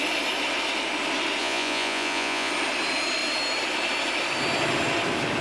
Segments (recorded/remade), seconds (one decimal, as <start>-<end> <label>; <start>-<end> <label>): 0.0-1.4 recorded; 1.4-2.5 remade; 2.5-5.4 recorded